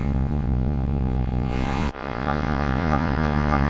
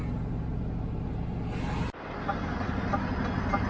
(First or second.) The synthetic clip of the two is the first